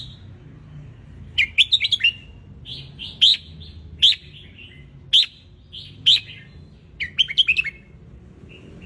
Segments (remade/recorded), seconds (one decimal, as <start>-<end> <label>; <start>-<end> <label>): 0.0-8.9 recorded